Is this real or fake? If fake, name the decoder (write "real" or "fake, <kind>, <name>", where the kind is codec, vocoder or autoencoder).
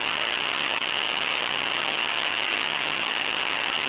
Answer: fake, vocoder, HiFi-GAN